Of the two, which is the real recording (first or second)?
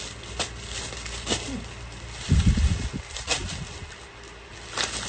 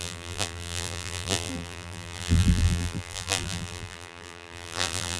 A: first